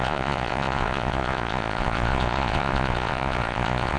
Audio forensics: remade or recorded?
remade